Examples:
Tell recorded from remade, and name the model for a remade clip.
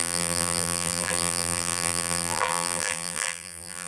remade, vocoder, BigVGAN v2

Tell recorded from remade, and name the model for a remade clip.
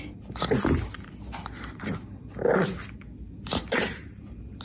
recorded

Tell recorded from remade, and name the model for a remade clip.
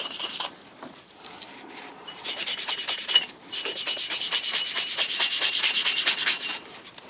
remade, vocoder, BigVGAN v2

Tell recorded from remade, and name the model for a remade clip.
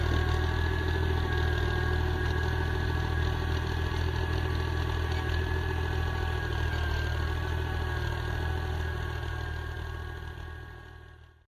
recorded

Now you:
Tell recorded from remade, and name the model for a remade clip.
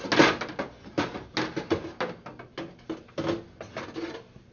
recorded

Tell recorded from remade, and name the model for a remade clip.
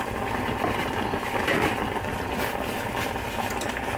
remade, vocoder, BigVGAN v2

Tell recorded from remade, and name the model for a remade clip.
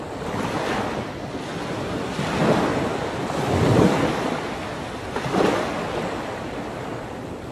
recorded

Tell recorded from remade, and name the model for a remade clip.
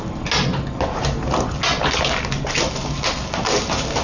recorded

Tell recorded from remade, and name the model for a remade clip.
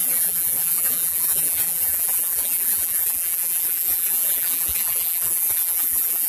remade, vocoder, BigVGAN v2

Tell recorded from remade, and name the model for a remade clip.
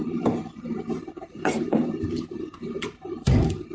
remade, vocoder, BigVGAN v2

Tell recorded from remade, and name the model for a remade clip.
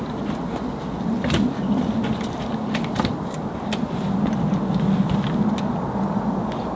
recorded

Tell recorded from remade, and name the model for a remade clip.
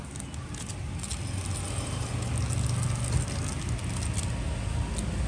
recorded